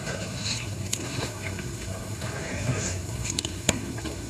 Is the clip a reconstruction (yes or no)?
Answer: yes